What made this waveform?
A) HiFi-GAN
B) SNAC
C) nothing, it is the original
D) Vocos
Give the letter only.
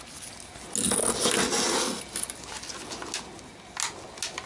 C